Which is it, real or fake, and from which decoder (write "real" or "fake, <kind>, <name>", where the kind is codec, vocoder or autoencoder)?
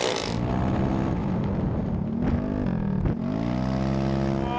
real